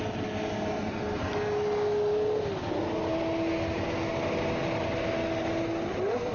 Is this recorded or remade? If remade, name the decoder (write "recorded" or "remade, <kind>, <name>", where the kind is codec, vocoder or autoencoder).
recorded